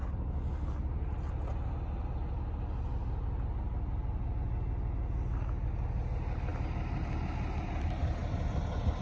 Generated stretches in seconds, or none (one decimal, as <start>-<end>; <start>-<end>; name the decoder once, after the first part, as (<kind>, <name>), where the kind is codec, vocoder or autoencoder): none